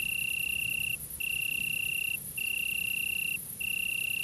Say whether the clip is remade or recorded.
recorded